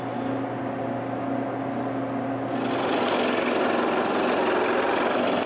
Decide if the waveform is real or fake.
real